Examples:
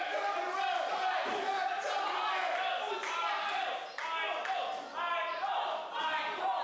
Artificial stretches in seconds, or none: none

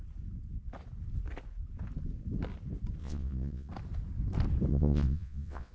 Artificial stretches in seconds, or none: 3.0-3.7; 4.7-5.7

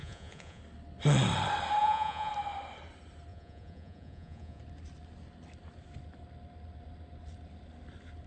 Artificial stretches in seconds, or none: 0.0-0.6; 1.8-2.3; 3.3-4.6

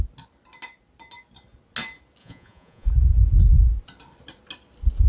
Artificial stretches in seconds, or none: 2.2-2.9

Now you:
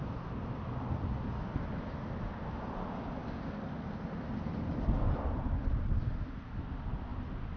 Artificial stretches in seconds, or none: none